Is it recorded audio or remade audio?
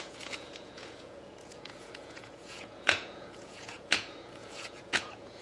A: remade